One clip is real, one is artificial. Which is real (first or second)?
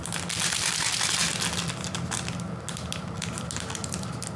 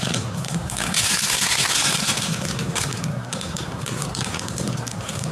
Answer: first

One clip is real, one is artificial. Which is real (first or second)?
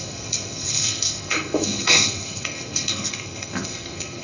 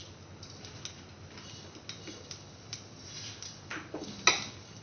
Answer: second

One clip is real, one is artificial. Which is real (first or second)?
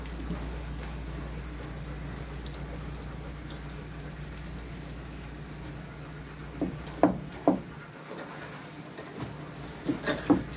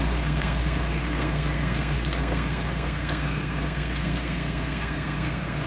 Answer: first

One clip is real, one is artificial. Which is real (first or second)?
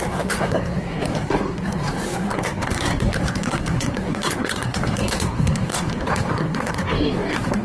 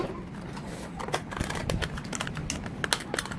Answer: second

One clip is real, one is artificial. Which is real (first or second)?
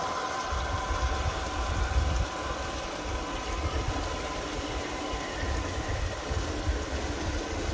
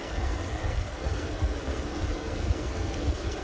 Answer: first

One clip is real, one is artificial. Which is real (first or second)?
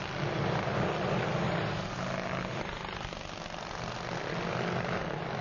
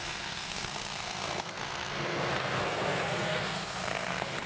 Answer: first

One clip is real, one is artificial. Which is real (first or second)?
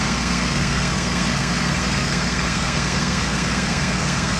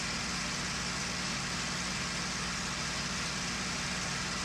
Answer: second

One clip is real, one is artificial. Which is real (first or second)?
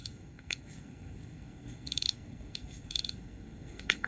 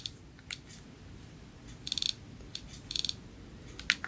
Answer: second